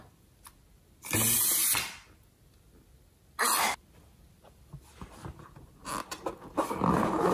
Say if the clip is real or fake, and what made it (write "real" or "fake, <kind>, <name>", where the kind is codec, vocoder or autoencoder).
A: real